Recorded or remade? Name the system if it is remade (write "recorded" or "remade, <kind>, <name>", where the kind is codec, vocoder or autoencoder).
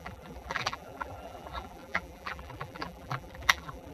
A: remade, vocoder, BigVGAN v2